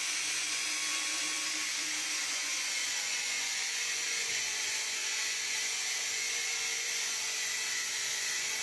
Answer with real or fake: fake